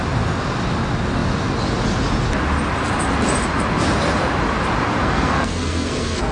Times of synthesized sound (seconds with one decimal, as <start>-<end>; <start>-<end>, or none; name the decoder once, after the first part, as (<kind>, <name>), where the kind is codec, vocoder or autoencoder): 5.0-6.3 (codec, SNAC)